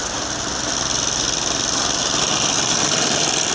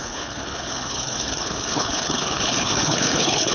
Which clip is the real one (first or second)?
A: first